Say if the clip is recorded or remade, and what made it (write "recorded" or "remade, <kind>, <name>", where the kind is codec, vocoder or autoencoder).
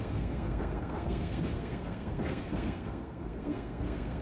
remade, codec, SNAC